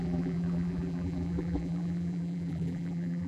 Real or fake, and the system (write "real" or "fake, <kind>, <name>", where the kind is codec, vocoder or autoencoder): fake, vocoder, BigVGAN v2